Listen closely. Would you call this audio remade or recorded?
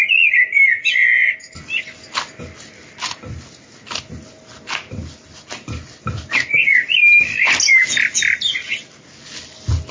recorded